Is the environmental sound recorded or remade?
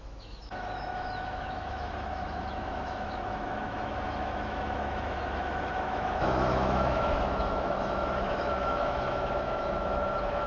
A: remade